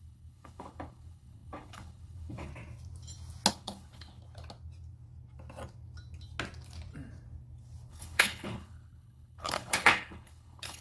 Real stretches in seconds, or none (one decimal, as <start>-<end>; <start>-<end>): 2.5-3.5; 4.2-7.9